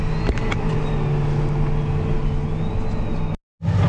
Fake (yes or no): no